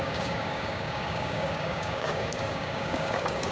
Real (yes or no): no